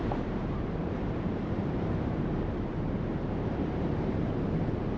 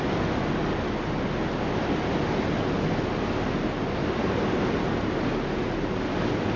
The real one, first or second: second